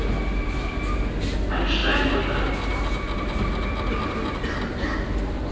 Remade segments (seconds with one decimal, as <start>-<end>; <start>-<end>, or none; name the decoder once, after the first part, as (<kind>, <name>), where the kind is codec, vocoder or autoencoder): none